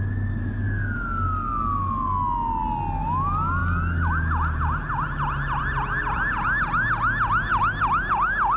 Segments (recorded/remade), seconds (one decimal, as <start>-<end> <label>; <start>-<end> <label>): 0.0-8.6 recorded